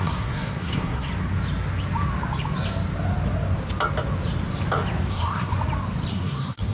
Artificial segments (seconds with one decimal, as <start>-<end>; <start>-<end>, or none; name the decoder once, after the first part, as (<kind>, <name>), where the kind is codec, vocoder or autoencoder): 0.0-1.1 (codec, SNAC); 5.1-5.5; 6.1-6.7